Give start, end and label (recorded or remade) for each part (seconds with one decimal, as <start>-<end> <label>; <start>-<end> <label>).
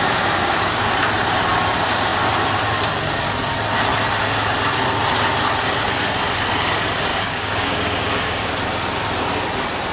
0.0-0.4 recorded; 0.4-0.9 remade; 0.9-7.1 recorded; 7.1-8.6 remade; 8.6-9.9 recorded